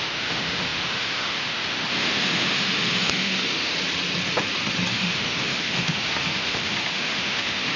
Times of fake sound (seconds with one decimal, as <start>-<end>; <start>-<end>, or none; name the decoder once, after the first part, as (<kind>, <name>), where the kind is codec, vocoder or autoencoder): 0.0-3.7 (autoencoder, DAC-VAE); 4.9-7.8